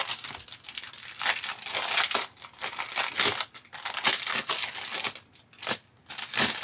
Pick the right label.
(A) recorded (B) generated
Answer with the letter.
A